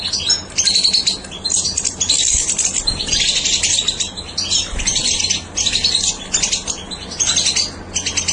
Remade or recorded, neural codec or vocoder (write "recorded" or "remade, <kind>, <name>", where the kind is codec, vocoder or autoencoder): recorded